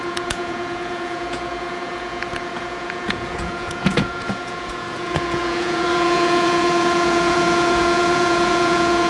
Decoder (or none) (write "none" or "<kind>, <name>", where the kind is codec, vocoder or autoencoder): vocoder, Vocos